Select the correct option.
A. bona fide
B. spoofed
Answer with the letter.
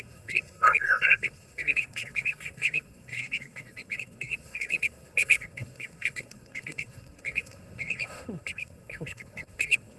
B